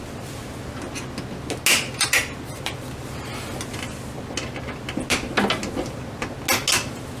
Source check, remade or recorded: recorded